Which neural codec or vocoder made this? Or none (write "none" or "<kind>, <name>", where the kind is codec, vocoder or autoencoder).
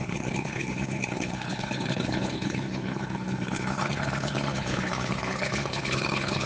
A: codec, HILCodec